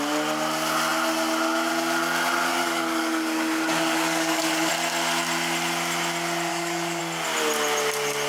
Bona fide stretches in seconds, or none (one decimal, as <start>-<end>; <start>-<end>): 0.0-2.5; 4.7-6.5; 7.0-8.3